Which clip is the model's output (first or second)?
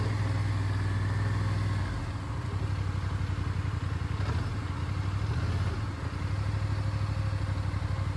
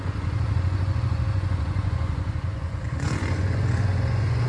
second